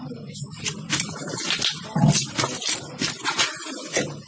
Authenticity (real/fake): real